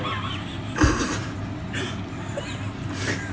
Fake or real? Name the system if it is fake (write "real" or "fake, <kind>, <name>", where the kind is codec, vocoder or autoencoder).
real